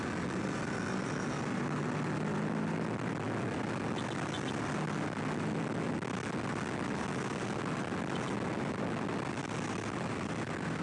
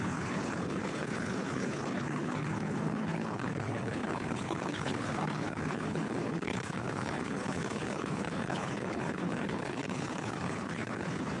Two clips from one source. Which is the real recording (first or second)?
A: first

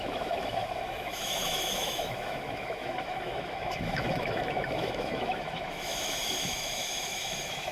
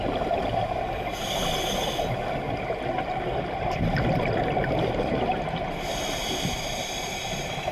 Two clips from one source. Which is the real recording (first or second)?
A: second